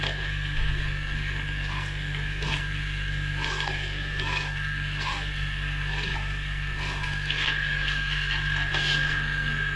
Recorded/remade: remade